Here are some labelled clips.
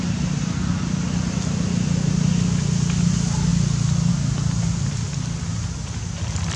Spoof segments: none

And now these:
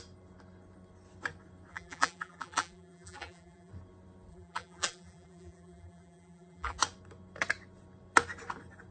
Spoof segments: 1.7-3.7; 4.3-6.8

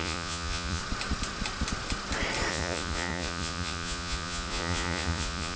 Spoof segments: 0.0-0.8; 2.5-5.6